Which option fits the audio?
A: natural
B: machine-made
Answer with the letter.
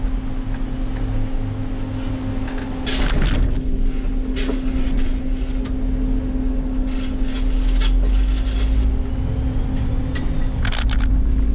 A